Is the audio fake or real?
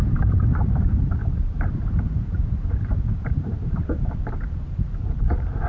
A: fake